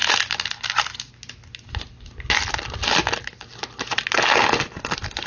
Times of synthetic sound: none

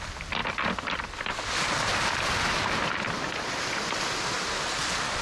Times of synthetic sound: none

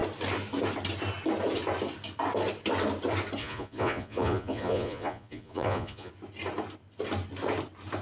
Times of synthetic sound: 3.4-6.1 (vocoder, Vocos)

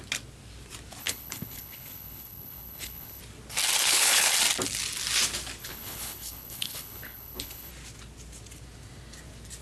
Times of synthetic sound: 1.0-3.2 (codec, HILCodec); 3.8-4.3; 5.6-7.7

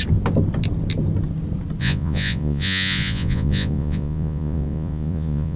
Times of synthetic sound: 1.8-5.6 (vocoder, Vocos)

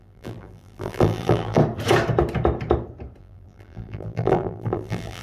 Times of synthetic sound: 0.0-1.6 (vocoder, BigVGAN v2); 3.2-5.2

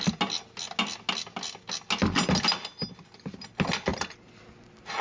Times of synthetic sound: none